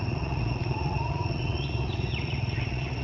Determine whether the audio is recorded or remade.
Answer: remade